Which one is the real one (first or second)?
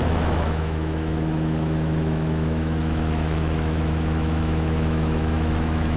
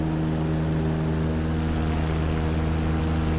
second